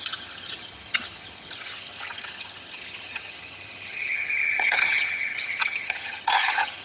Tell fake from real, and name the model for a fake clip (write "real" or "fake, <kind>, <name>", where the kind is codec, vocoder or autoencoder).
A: fake, vocoder, HiFi-GAN